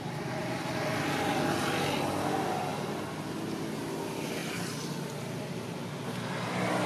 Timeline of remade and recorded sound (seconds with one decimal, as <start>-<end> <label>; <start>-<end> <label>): 0.0-6.9 recorded

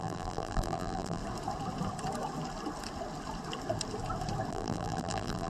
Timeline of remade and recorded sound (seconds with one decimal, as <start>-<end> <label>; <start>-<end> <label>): 0.0-1.2 remade; 1.2-4.5 recorded; 4.5-5.5 remade

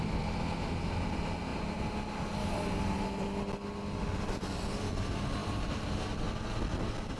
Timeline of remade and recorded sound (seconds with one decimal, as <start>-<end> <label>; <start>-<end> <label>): 0.0-5.4 recorded; 5.4-6.0 remade; 6.0-7.2 recorded